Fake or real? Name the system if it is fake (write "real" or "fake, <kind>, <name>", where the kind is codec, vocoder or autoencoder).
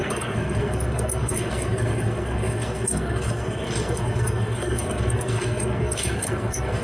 fake, codec, SNAC